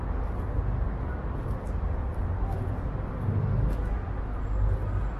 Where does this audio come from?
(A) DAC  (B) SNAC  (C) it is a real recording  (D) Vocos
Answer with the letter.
C